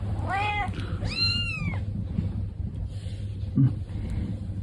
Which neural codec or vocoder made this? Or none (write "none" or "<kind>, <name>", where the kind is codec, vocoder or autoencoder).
none